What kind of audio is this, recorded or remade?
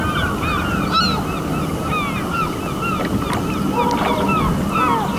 recorded